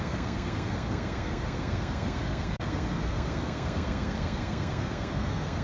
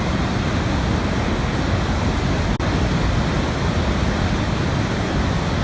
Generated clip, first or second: first